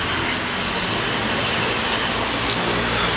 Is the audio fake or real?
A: real